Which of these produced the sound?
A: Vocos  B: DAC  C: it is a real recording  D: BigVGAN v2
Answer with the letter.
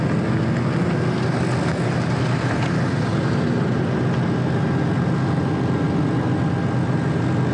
C